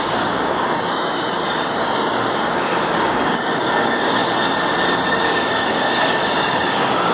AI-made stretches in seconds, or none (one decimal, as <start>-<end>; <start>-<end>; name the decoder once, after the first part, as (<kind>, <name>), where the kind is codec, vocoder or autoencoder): 0.0-4.2 (codec, DAC); 5.1-7.1

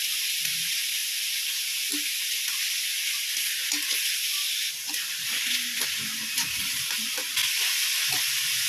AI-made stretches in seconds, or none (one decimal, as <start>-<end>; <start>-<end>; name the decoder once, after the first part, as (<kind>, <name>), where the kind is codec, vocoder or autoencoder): none

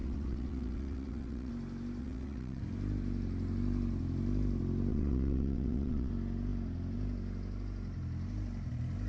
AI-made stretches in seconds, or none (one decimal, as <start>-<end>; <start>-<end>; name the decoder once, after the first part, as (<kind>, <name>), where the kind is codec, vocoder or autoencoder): 0.0-1.5 (vocoder, WaveNeXt); 2.0-2.6; 4.9-6.1